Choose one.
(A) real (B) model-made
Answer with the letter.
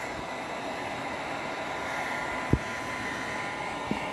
A